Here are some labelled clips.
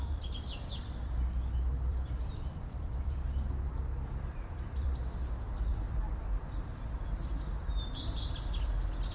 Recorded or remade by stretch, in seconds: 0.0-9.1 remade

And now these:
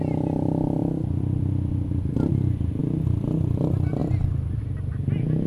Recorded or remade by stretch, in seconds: 0.0-5.5 remade

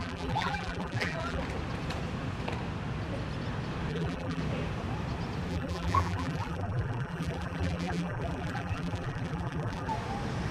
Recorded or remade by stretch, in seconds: 0.0-1.4 remade; 1.4-3.9 recorded; 3.9-4.4 remade; 4.4-5.5 recorded; 5.5-9.9 remade; 9.9-10.5 recorded